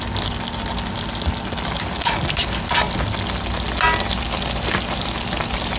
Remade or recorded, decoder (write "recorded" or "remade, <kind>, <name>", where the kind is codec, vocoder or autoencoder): recorded